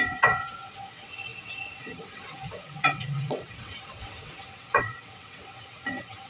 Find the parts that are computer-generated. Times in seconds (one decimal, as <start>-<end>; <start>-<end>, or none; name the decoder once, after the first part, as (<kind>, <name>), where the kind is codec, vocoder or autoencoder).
0.0-6.3 (vocoder, WaveNeXt)